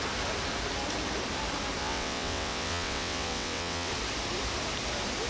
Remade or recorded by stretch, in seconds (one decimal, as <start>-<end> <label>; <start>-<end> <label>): 0.0-1.8 recorded; 1.8-3.9 remade; 3.9-5.3 recorded